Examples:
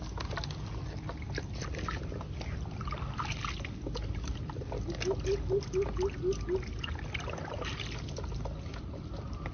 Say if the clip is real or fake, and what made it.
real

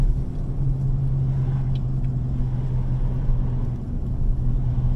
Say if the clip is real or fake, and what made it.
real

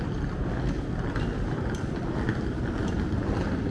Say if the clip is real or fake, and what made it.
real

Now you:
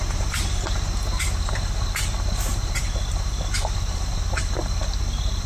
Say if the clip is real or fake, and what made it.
fake, vocoder, BigVGAN v2